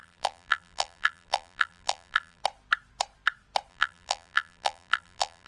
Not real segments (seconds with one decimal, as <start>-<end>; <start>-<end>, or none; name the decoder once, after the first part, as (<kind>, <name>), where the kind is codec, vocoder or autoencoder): 0.0-2.4 (vocoder, BigVGAN v2); 3.7-5.5